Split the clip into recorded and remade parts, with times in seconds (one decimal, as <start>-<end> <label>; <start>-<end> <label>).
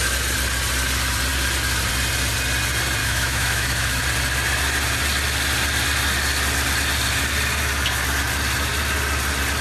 0.0-3.0 recorded; 3.0-4.0 remade; 4.0-9.6 recorded